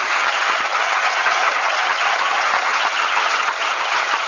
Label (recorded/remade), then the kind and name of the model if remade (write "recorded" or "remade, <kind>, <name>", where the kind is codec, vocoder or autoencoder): remade, vocoder, HiFi-GAN